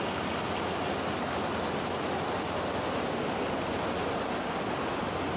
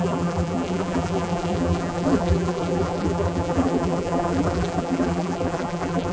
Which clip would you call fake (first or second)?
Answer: second